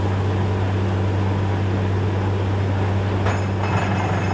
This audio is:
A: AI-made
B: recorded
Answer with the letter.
B